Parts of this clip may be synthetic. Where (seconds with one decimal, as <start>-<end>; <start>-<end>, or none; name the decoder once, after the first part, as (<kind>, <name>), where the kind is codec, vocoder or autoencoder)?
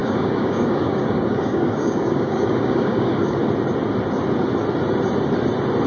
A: 0.0-3.4 (codec, DAC)